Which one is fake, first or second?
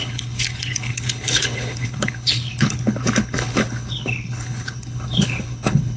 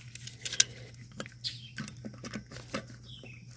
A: first